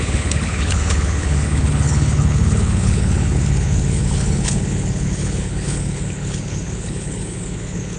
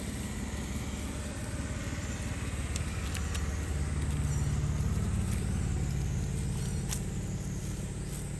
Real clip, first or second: second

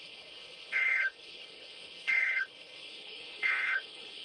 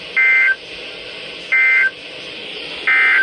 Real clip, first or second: second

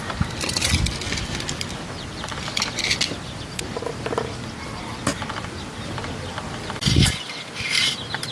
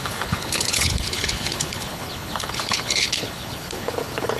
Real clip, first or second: first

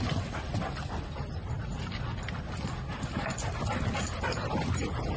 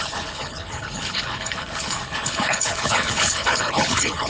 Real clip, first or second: first